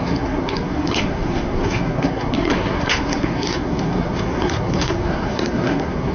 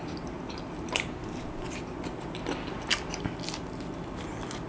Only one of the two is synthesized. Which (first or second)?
first